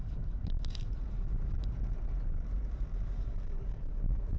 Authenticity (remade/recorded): remade